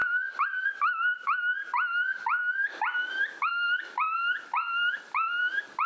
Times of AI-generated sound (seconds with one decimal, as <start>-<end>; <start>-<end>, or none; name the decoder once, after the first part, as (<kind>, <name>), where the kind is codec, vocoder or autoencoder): none